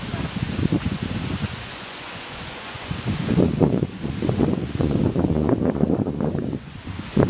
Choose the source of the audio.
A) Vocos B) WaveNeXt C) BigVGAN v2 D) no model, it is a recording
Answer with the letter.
A